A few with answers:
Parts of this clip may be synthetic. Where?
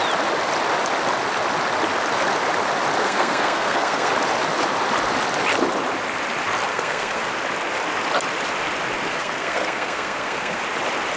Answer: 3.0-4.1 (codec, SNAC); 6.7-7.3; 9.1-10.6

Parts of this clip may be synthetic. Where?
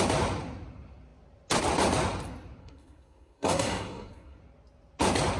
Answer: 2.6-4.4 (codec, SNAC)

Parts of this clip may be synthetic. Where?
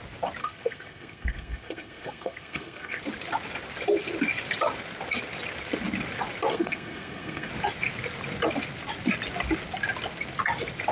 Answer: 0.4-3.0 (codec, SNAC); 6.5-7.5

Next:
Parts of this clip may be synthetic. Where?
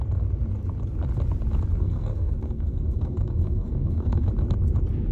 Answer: 1.8-4.3 (codec, SNAC)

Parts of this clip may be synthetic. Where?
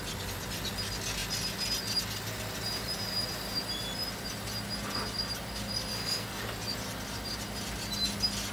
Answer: 5.9-6.4 (codec, SNAC)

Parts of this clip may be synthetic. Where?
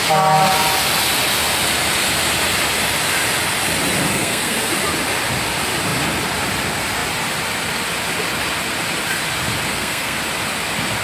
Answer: 4.1-4.7 (codec, SNAC); 9.7-10.2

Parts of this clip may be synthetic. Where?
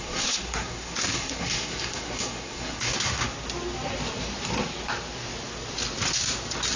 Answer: 0.0-3.2 (codec, SNAC)